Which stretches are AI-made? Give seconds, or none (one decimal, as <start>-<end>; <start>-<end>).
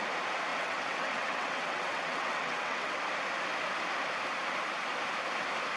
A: 0.5-3.0